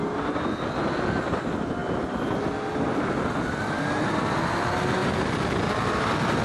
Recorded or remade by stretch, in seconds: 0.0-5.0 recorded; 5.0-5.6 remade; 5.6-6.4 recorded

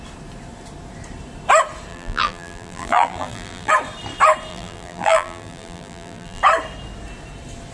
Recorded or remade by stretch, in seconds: 0.0-1.9 recorded; 1.9-3.7 remade; 3.7-4.5 recorded; 4.5-6.4 remade; 6.4-7.7 recorded

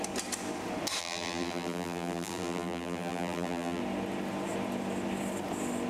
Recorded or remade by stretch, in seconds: 0.0-1.0 recorded; 1.0-3.8 remade; 3.8-5.9 recorded

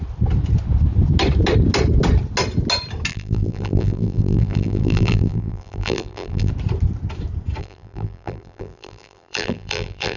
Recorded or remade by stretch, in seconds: 0.0-3.1 recorded; 3.1-6.5 remade; 6.5-7.6 recorded; 7.6-10.2 remade